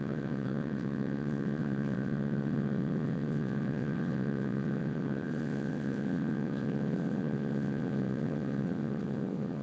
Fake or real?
fake